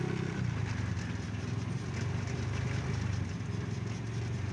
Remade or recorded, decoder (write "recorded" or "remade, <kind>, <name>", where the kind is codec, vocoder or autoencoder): recorded